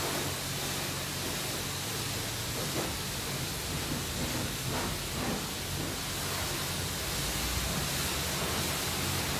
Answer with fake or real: real